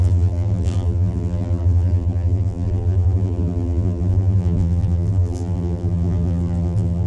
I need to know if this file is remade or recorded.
remade